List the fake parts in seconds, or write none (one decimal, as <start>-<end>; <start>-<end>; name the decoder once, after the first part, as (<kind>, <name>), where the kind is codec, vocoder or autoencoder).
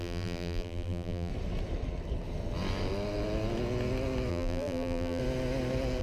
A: 0.0-1.3 (vocoder, BigVGAN v2); 4.3-5.2